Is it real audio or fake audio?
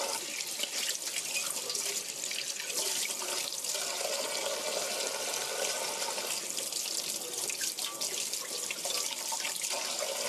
real